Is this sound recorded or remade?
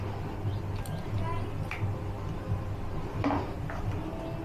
recorded